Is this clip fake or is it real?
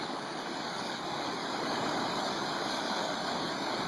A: fake